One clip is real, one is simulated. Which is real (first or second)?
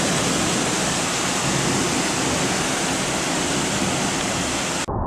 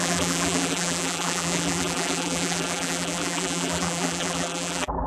first